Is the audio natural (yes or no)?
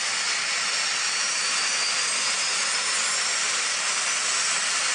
yes